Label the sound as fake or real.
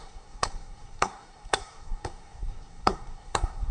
fake